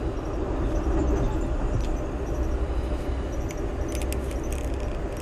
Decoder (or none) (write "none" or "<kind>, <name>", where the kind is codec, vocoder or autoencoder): none